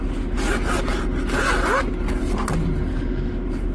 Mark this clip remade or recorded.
recorded